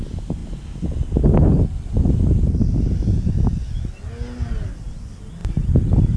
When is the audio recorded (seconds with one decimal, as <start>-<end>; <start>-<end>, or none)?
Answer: 0.0-6.2